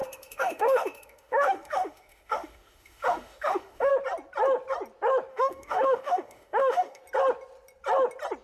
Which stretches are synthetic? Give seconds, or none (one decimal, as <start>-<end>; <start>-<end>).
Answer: 0.0-3.9; 5.3-7.0